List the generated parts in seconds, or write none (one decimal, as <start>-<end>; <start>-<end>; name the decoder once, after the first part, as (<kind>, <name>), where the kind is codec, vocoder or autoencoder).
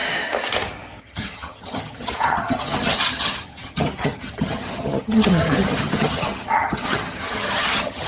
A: 1.0-8.1 (vocoder, HiFi-GAN)